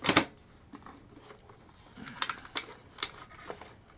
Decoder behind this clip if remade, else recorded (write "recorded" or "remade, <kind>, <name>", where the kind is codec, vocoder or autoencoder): recorded